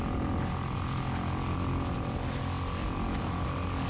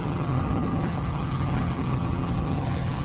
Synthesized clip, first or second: second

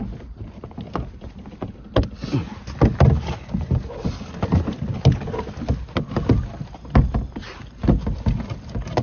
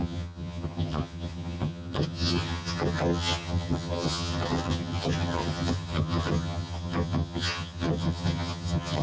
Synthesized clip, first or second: second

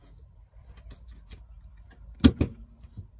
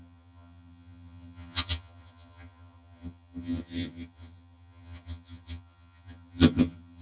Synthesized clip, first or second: second